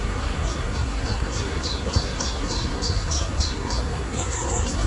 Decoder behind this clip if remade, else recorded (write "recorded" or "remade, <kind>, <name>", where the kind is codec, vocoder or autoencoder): remade, codec, SNAC